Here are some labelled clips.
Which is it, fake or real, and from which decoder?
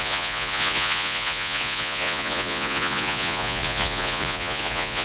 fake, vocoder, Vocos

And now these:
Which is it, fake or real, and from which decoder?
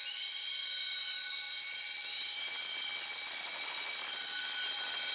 real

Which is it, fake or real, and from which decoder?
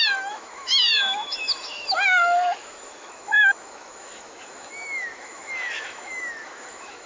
fake, autoencoder, DAC-VAE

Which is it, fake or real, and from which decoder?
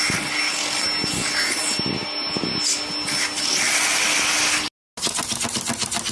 real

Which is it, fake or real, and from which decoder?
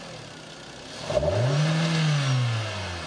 real